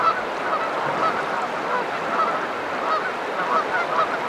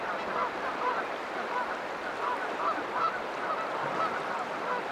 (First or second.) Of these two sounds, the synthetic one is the second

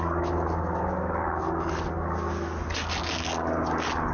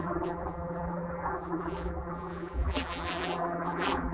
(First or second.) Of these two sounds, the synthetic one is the second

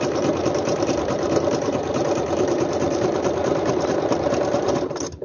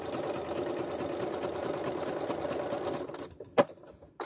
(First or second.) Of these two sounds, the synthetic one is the first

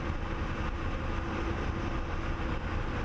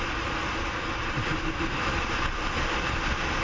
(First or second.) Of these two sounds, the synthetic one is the second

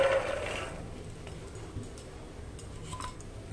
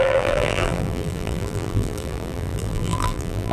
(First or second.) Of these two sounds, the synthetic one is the second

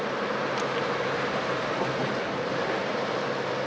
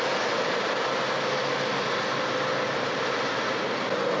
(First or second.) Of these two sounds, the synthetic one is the first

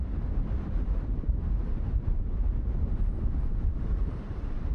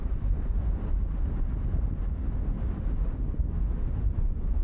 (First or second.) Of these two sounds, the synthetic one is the first